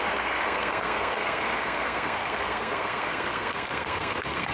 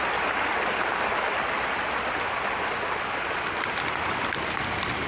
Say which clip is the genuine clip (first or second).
second